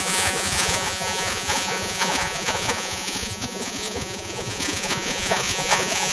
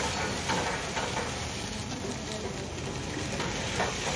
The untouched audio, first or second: second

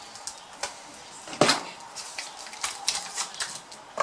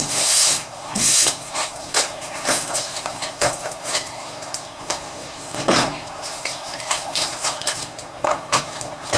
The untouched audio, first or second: first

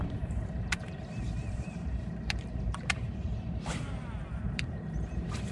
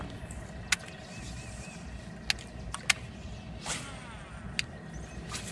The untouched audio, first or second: second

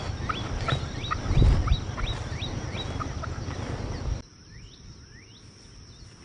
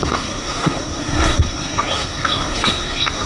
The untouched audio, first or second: first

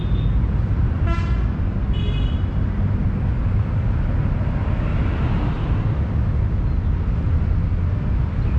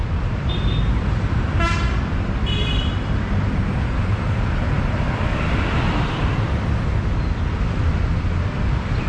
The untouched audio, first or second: first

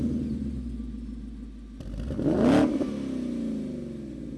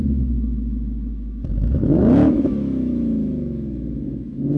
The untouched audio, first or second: first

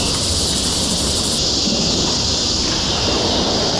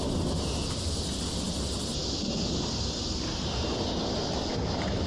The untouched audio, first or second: second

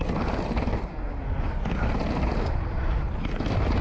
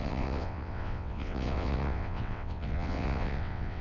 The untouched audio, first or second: first